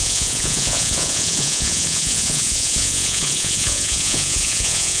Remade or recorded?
remade